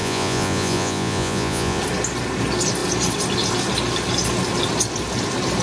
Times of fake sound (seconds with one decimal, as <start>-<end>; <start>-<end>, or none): 0.0-1.8

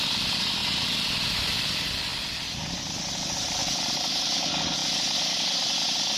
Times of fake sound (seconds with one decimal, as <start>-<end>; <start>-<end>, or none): 3.6-4.3